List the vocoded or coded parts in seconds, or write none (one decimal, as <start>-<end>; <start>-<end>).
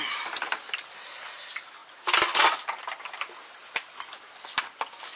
none